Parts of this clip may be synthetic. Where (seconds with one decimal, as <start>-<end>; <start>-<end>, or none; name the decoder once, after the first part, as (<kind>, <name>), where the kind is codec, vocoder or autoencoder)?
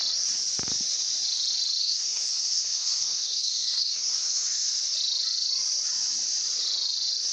1.8-4.7 (codec, SNAC)